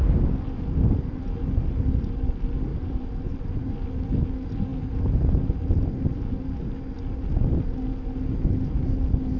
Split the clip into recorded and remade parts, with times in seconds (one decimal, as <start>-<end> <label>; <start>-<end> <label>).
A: 0.0-2.7 recorded; 2.7-3.7 remade; 3.7-9.4 recorded